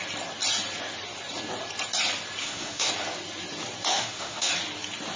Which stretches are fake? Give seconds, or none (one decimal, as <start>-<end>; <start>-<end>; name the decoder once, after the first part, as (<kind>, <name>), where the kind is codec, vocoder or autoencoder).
2.4-2.9 (autoencoder, DAC-VAE); 3.9-4.5